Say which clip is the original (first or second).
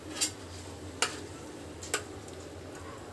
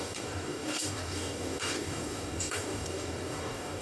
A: first